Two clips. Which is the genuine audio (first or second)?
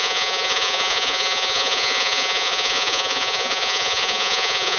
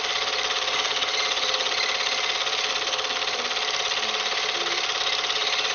second